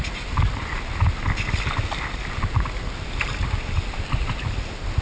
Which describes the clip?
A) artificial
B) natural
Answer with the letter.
B